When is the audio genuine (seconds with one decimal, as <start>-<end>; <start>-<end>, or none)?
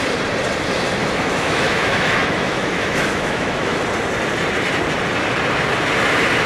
0.0-1.0; 3.8-6.5